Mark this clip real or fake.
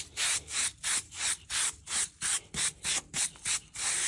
fake